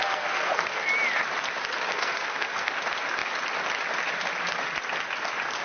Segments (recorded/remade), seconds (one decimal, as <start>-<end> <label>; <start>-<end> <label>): 0.0-0.9 remade; 0.9-1.9 recorded; 1.9-2.7 remade; 2.7-5.6 recorded